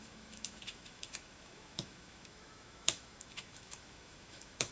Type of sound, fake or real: fake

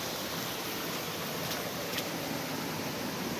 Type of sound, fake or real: real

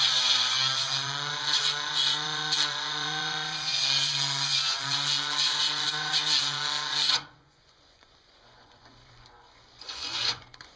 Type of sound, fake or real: fake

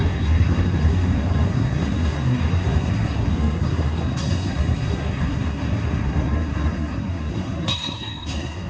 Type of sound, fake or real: fake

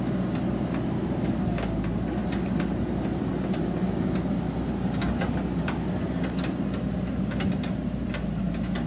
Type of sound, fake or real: real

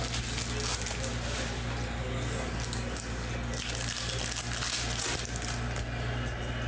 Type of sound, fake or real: real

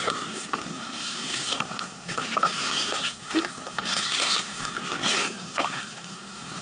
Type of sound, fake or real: fake